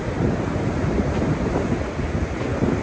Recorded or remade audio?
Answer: recorded